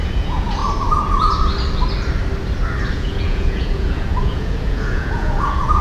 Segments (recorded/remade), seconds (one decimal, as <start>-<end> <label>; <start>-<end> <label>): 0.0-0.6 remade; 0.6-2.9 recorded; 2.9-5.8 remade